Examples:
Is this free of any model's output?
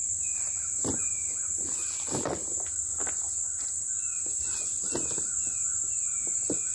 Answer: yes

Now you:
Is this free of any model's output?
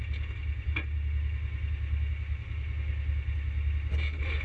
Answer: yes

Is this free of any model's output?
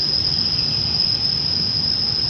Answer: yes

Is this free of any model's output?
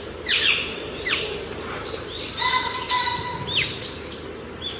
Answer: no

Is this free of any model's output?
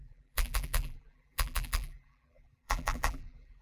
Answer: no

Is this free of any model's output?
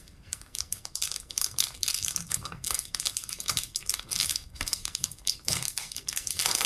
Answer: no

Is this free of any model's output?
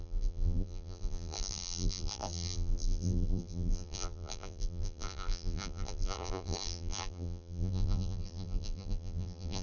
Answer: no